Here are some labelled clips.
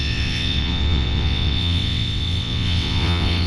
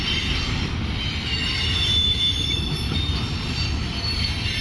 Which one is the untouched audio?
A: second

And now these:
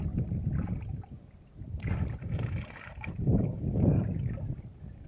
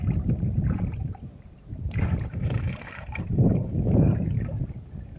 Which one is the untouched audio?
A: first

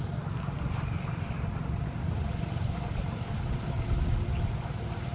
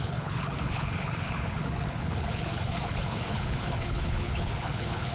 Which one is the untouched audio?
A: first